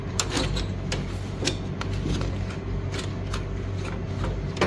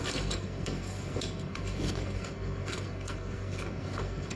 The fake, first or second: second